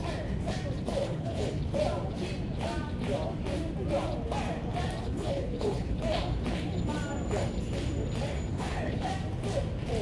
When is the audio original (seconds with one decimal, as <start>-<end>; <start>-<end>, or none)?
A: 0.0-1.0; 1.6-5.0; 6.0-8.5; 9.1-10.0